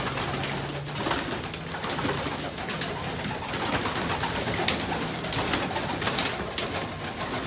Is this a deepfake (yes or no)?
no